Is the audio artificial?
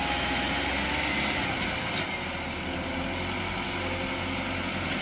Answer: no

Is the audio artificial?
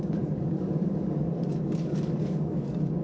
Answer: yes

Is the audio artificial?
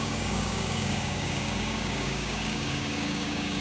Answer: yes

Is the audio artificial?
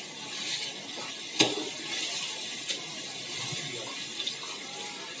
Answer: no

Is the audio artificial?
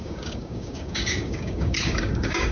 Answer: yes